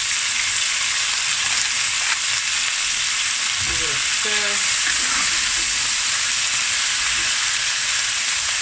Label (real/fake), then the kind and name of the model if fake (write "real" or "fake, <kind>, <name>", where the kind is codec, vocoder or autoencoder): real